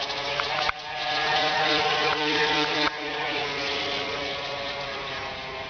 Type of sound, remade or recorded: remade